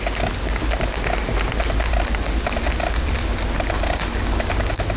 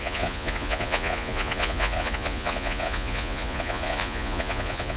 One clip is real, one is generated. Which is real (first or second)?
first